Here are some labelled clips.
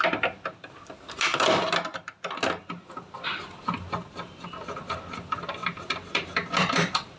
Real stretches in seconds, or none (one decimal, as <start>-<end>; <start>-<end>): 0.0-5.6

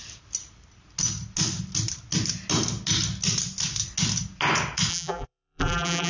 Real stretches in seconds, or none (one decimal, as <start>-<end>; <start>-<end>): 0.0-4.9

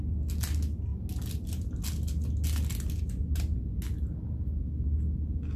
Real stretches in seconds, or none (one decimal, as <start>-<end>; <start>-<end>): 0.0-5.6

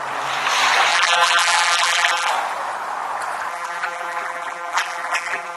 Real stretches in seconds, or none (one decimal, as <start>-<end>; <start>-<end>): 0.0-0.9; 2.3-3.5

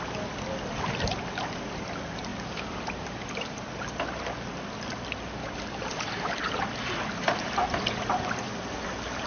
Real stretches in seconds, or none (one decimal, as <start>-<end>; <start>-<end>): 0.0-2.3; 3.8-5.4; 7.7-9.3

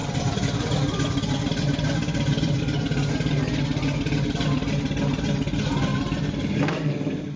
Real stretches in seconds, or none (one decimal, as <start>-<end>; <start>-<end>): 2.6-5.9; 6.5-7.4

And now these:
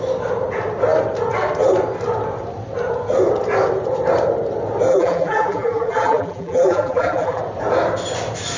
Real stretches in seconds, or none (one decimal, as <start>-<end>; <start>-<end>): 0.0-4.9; 7.4-8.6

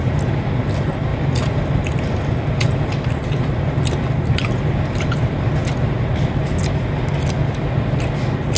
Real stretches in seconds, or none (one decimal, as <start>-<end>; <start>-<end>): 0.0-1.1; 3.4-8.6